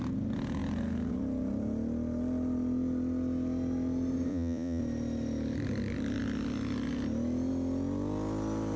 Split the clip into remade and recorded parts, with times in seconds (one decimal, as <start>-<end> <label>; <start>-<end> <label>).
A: 0.0-4.3 recorded; 4.3-4.8 remade; 4.8-8.8 recorded